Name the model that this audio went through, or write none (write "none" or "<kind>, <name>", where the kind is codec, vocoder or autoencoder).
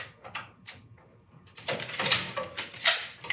none